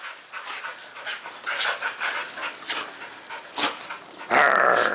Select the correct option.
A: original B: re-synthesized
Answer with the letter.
A